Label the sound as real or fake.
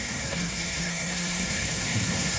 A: fake